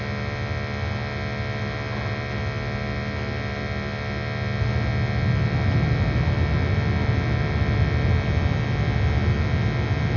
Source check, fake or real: real